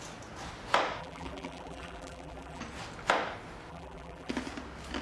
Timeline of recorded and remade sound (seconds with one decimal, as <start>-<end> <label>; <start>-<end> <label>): 0.0-1.0 recorded; 1.0-2.6 remade; 2.6-3.7 recorded; 3.7-4.3 remade; 4.3-5.0 recorded